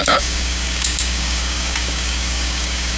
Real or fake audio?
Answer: fake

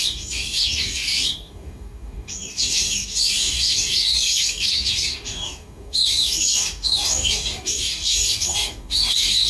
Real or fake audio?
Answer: fake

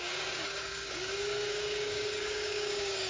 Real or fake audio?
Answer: fake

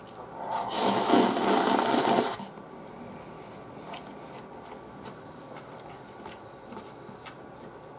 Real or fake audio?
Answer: real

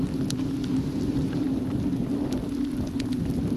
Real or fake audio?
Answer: real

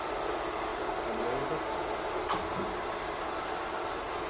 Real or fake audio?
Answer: real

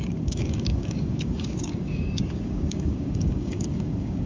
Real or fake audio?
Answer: fake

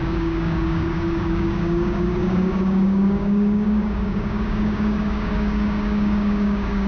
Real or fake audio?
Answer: fake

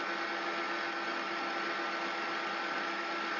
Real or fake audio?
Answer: real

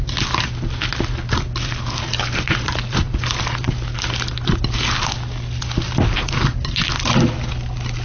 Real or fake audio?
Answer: real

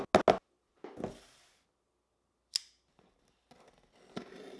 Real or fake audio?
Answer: real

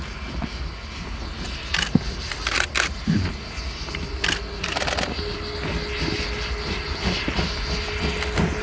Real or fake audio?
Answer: real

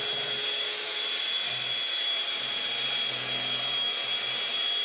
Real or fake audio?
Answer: real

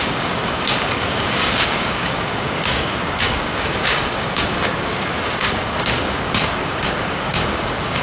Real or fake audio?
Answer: fake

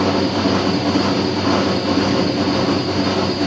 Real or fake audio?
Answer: real